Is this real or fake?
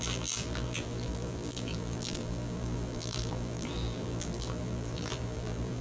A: fake